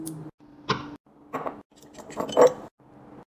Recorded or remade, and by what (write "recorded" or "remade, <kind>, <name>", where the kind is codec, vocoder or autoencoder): recorded